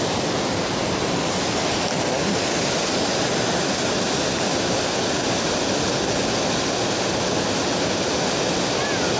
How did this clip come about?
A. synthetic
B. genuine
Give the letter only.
B